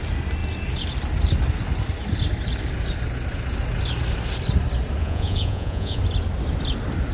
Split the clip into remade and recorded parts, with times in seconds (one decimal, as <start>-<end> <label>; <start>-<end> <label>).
0.0-5.0 recorded; 5.0-6.0 remade; 6.0-7.1 recorded